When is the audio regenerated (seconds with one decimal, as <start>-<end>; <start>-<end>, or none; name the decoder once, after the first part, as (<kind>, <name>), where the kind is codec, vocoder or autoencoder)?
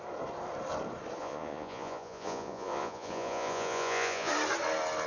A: 1.2-4.3 (vocoder, Vocos)